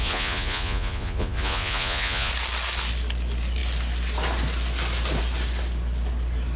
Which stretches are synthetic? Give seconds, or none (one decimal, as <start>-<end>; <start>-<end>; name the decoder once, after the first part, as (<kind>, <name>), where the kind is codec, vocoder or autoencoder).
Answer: 0.0-2.3 (vocoder, Vocos)